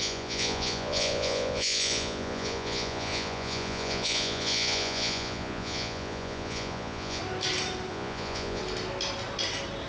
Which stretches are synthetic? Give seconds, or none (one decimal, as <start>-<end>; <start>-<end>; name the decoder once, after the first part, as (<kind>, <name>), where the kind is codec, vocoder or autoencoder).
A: 0.0-7.2 (vocoder, Vocos); 7.9-8.6